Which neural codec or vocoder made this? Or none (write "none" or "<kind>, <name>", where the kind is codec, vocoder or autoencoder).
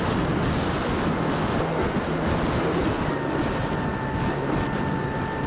none